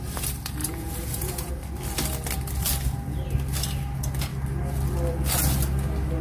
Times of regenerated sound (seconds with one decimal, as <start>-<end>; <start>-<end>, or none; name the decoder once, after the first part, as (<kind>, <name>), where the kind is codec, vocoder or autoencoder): 0.6-1.5 (vocoder, Vocos)